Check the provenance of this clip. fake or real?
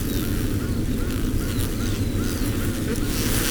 real